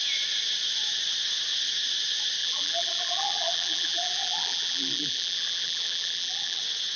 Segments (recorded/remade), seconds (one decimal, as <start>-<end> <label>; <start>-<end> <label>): 0.0-2.4 recorded; 2.4-6.6 remade; 6.6-7.0 recorded